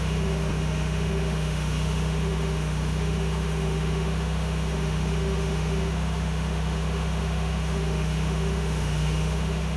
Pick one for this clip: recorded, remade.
remade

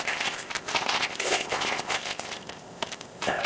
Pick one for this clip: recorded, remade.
remade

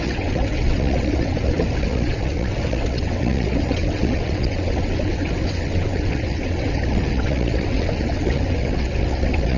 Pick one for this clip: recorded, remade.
remade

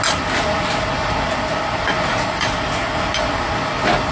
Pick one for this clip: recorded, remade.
recorded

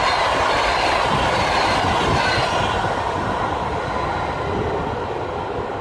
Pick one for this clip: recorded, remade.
recorded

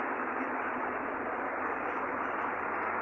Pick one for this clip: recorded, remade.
recorded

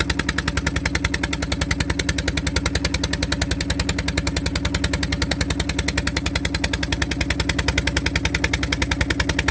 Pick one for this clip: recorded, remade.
recorded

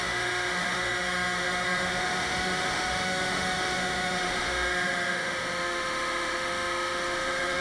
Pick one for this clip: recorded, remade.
remade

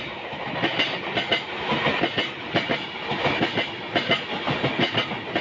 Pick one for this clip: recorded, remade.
recorded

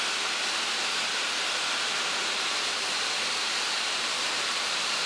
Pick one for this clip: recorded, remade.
recorded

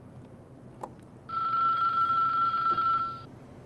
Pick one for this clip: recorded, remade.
recorded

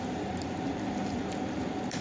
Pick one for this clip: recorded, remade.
remade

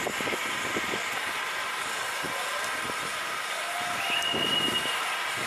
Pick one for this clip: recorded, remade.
recorded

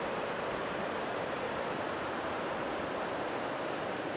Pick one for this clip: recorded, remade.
recorded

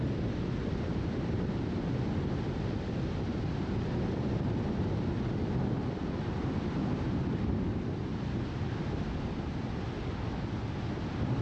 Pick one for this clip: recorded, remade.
recorded